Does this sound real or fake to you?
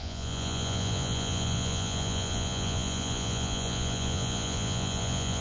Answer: fake